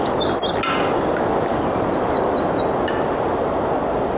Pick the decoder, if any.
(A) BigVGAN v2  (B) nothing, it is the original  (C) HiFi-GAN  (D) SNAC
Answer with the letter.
B